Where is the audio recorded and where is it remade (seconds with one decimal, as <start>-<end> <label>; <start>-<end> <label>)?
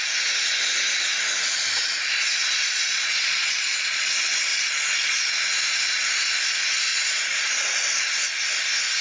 0.0-2.4 recorded; 2.4-4.1 remade; 4.1-4.5 recorded; 4.5-5.4 remade; 5.4-6.9 recorded; 6.9-7.5 remade; 7.5-9.0 recorded